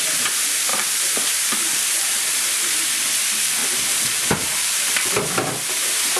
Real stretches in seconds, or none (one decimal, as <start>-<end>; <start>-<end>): 0.0-0.7; 2.7-3.6; 5.1-6.2